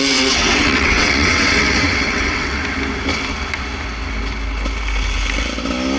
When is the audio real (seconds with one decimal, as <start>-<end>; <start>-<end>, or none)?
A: 2.6-6.0